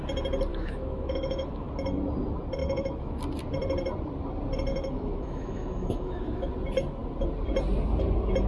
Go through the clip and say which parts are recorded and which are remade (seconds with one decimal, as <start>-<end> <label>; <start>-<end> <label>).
0.0-0.5 recorded; 0.5-1.7 remade; 1.7-2.6 recorded; 2.6-3.2 remade; 3.2-4.7 recorded; 4.7-6.5 remade; 6.5-8.5 recorded